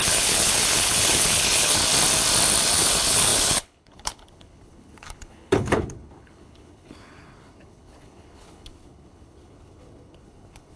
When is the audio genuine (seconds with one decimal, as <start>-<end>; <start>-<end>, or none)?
1.8-2.7